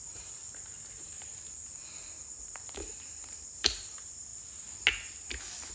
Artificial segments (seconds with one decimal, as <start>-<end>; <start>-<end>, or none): 0.0-0.4; 0.9-1.3; 2.2-4.3